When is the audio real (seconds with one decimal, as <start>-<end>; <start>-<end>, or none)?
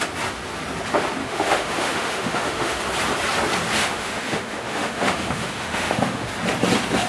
0.0-1.2; 2.8-3.8; 6.3-7.1